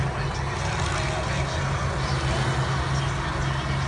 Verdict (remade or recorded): recorded